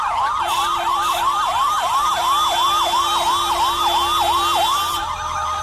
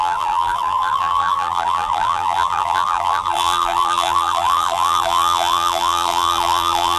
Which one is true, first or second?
first